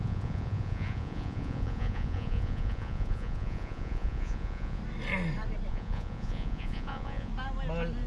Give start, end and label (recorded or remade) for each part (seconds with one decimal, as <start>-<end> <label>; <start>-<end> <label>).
0.0-4.8 remade; 4.8-5.7 recorded; 5.7-7.3 remade; 7.3-8.1 recorded